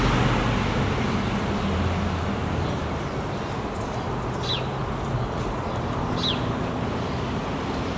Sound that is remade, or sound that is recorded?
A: recorded